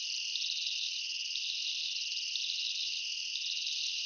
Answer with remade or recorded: recorded